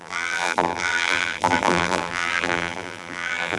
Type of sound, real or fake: fake